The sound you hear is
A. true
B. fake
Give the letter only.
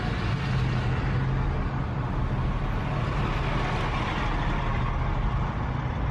A